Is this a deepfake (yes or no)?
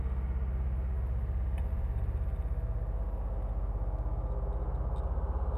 no